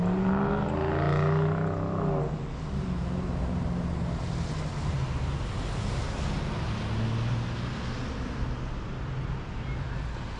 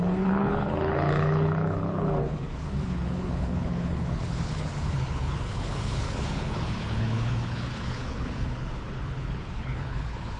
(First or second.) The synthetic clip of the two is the second